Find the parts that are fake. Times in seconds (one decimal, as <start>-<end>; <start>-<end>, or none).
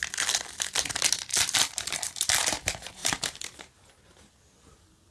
1.3-2.0